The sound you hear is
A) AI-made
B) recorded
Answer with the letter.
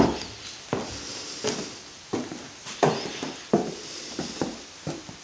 B